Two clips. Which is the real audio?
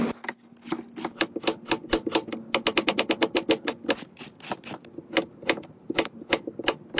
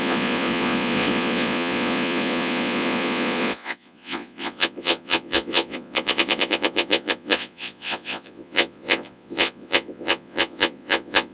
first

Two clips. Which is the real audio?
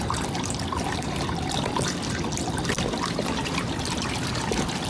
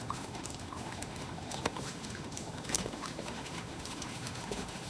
first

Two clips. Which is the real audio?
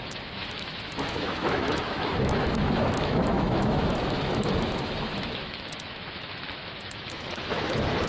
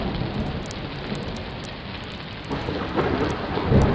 second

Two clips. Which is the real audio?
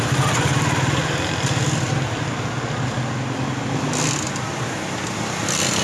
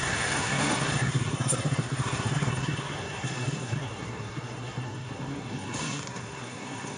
first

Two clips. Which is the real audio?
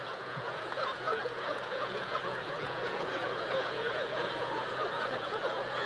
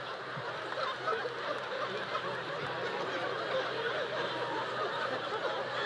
second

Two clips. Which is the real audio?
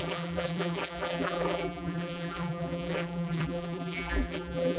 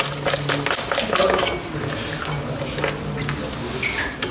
second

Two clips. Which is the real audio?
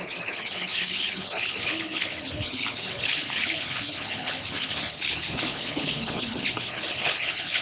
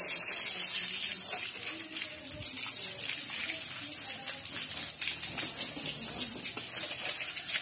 second